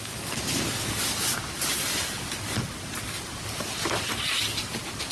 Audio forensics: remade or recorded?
recorded